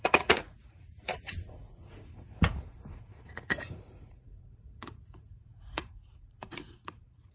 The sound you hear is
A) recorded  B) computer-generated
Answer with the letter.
B